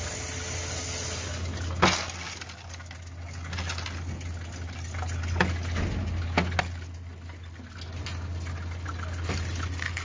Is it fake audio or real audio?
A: real